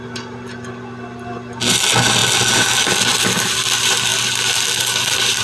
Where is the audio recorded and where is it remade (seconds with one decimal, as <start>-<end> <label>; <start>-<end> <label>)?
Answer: 0.0-5.4 remade

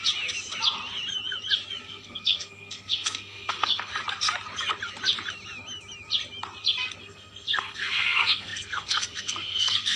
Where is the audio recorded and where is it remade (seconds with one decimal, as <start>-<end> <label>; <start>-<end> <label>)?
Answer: 0.0-1.8 recorded; 1.8-3.9 remade; 3.9-7.0 recorded; 7.0-10.0 remade

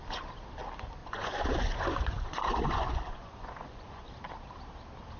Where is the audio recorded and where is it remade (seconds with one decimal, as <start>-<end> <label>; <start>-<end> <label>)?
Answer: 0.0-1.0 recorded; 1.0-4.1 remade; 4.1-5.2 recorded

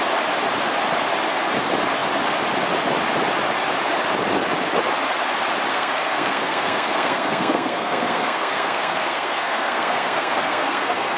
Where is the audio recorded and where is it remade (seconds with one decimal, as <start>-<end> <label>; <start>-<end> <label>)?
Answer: 0.0-5.7 recorded; 5.7-11.2 remade

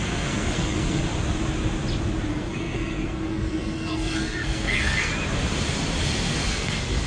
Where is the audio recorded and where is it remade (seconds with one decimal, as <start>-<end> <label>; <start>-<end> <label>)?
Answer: 0.0-1.0 remade; 1.0-2.3 recorded; 2.3-5.1 remade; 5.1-6.5 recorded; 6.5-7.1 remade

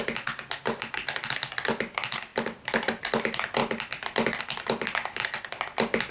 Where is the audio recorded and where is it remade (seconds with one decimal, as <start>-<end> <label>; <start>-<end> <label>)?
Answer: 0.0-6.1 recorded

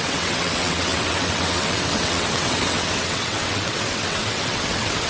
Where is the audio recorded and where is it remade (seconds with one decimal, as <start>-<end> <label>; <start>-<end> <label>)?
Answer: 0.0-5.1 remade

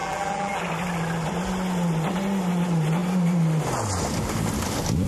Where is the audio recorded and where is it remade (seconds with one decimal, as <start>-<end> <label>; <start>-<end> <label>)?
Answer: 0.0-0.6 remade; 0.6-5.1 recorded